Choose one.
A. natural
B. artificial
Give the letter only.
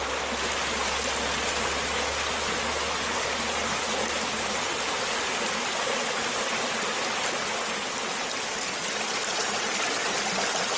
A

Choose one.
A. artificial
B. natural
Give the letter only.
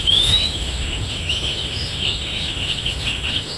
A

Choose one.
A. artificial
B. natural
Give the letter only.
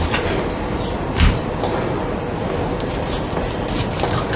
B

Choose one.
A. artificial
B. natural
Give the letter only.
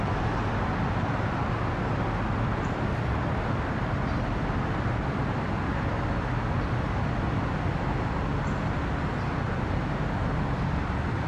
B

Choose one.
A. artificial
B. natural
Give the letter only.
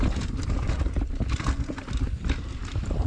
B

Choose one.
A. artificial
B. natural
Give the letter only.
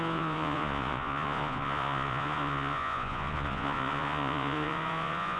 A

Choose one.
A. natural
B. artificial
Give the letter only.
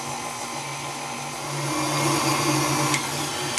A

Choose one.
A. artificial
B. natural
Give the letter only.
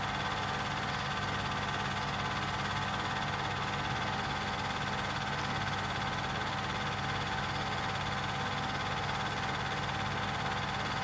B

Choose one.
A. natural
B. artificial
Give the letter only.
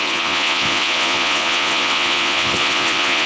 B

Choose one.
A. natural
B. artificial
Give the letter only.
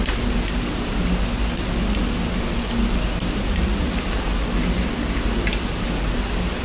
A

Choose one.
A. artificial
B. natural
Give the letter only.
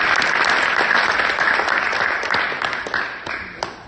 B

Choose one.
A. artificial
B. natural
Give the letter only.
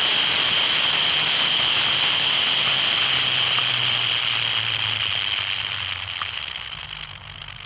B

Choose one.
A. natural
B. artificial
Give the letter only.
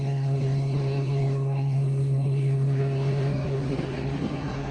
B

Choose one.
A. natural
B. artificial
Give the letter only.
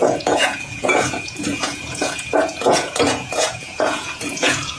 B